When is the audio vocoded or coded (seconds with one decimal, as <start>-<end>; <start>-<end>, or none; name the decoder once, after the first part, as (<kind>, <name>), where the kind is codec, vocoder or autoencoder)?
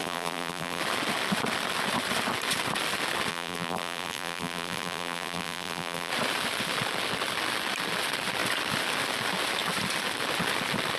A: 0.0-0.8 (vocoder, BigVGAN v2); 3.3-6.1